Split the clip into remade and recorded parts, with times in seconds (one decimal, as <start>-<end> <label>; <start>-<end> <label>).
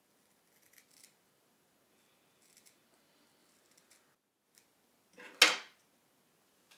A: 0.0-6.8 recorded